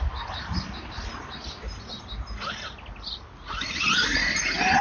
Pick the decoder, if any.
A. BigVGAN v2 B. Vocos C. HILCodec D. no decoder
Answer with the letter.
D